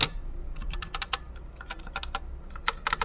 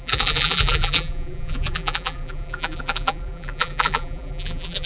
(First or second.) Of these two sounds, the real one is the first